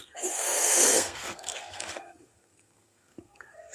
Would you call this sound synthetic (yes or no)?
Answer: yes